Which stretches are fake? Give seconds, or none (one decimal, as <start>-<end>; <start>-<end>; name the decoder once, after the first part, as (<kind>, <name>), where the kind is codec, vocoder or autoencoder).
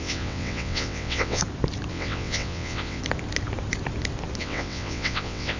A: 0.0-1.4 (vocoder, WaveNeXt); 1.9-3.0; 4.4-5.6